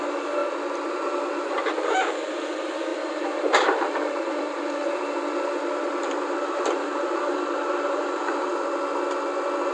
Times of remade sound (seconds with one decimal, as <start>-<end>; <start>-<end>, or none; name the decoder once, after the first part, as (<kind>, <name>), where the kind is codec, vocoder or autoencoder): 0.0-0.4 (vocoder, BigVGAN v2); 0.9-8.5